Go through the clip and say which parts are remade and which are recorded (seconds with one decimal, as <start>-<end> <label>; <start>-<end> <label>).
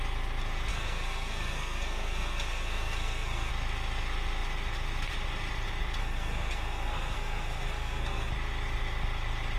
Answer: 0.0-0.7 recorded; 0.7-3.5 remade; 3.5-6.0 recorded; 6.0-8.3 remade; 8.3-9.6 recorded